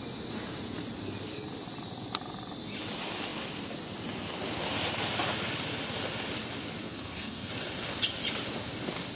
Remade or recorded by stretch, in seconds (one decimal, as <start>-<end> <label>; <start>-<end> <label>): 0.0-6.8 recorded; 6.8-7.5 remade; 7.5-9.2 recorded